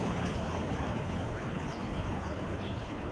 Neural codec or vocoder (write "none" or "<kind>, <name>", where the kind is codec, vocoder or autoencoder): codec, HILCodec